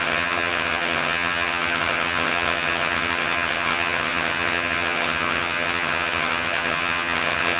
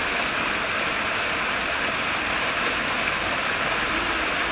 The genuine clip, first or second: second